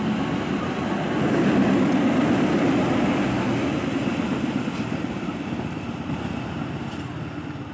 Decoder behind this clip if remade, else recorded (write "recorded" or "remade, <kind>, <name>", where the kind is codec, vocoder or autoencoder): recorded